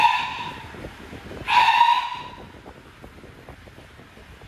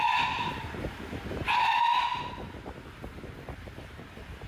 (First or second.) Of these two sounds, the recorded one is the first